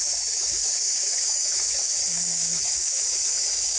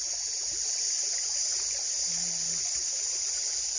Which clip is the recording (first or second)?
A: second